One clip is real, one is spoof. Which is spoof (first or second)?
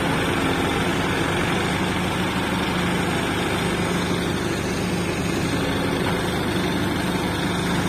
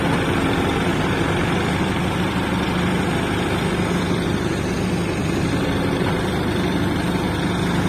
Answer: second